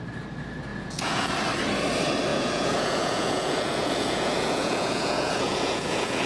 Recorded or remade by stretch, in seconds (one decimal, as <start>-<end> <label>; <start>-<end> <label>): 0.0-0.7 recorded; 0.7-1.3 remade; 1.3-2.3 recorded; 2.3-6.3 remade